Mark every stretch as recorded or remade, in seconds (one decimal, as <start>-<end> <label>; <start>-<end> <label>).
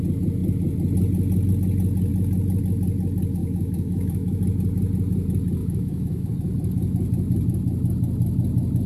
0.0-3.4 recorded; 3.4-4.4 remade; 4.4-5.6 recorded; 5.6-6.3 remade; 6.3-8.9 recorded